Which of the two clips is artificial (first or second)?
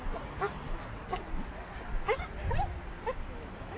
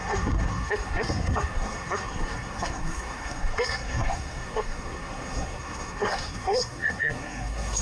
second